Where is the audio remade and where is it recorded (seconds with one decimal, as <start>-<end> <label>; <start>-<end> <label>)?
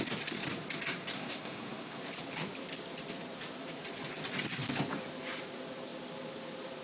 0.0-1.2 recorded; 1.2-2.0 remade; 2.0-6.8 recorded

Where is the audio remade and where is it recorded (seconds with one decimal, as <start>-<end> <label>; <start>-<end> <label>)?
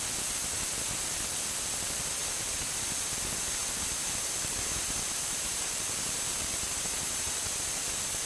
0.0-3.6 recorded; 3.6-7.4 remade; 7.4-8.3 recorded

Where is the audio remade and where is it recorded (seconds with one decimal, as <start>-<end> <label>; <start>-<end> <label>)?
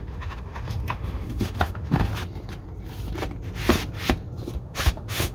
0.0-2.1 remade; 2.1-4.6 recorded; 4.6-5.3 remade